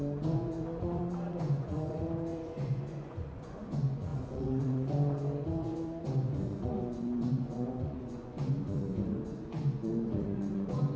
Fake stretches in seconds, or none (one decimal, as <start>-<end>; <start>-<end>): 0.0-11.0